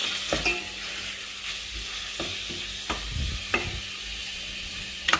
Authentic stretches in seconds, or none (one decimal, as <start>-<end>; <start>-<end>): 0.0-4.2